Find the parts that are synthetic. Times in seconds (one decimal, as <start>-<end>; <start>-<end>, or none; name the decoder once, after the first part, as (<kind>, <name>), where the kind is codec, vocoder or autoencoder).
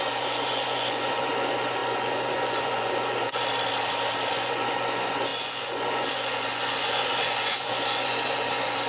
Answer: 0.0-3.4 (vocoder, Vocos); 4.3-8.9